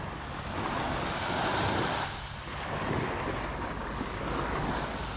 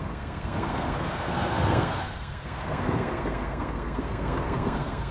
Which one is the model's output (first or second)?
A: second